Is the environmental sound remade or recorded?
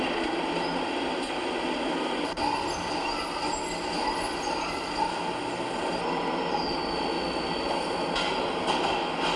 recorded